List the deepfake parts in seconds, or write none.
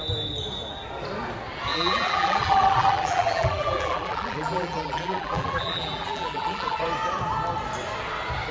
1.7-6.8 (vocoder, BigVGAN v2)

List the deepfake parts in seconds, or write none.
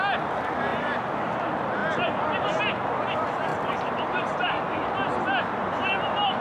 3.5-4.6 (vocoder, BigVGAN v2)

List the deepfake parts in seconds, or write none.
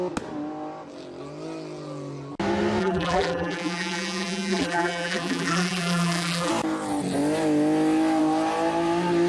2.8-6.5 (vocoder, BigVGAN v2)